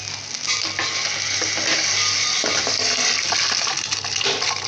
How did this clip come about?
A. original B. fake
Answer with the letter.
A